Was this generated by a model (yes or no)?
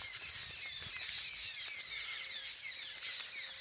no